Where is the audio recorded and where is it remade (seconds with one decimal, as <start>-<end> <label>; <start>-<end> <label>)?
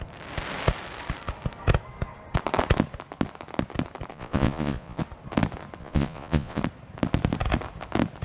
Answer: 0.0-4.1 recorded; 4.1-5.0 remade; 5.0-5.8 recorded; 5.8-6.6 remade; 6.6-8.2 recorded